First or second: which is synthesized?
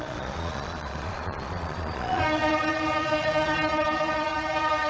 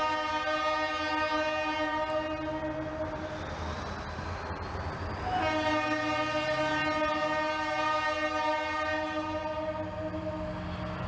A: first